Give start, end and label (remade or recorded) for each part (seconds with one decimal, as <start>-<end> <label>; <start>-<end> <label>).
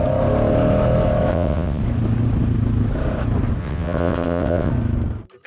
0.0-1.3 recorded; 1.3-1.8 remade; 1.8-3.6 recorded; 3.6-4.7 remade; 4.7-5.5 recorded